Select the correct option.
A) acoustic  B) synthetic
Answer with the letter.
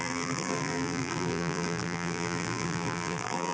B